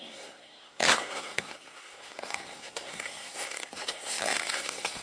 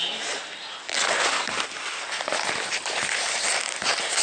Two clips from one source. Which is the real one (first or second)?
second